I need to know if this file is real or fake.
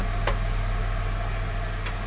real